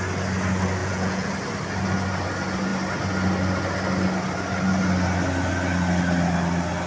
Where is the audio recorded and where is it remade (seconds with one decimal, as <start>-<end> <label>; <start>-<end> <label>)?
0.0-0.8 recorded; 0.8-1.3 remade; 1.3-6.9 recorded